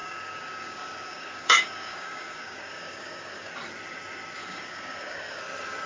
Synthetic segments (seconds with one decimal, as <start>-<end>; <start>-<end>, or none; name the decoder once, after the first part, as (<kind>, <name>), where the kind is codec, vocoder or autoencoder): 0.0-3.5 (codec, DAC); 4.4-5.4

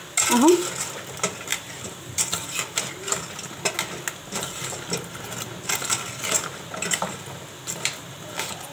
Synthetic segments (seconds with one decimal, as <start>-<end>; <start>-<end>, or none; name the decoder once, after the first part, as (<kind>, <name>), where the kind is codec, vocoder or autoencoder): 1.5-2.6 (vocoder, BigVGAN v2)

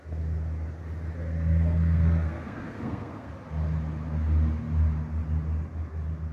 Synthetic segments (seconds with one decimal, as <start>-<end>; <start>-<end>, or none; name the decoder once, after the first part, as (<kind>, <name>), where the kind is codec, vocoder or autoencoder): 1.2-3.3 (codec, SNAC)

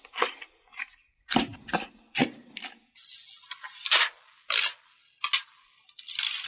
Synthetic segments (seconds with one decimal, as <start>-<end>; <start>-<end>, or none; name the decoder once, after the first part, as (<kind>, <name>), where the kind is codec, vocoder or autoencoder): none

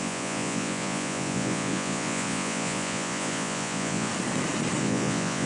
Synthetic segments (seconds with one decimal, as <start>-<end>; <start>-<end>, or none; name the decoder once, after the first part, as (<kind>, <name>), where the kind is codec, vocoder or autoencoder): 0.0-4.1 (vocoder, Vocos); 4.8-5.5

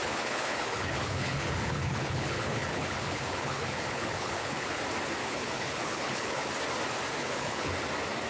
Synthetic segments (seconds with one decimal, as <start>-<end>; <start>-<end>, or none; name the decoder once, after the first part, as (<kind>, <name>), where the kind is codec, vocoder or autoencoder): 0.0-4.8 (codec, HILCodec); 5.2-6.5; 7.2-7.7

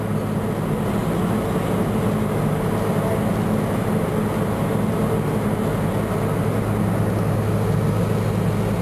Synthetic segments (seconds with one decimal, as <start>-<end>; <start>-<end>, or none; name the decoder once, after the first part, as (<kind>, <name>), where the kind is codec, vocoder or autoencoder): none